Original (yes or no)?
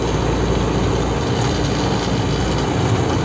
yes